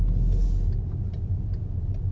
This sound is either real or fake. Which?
real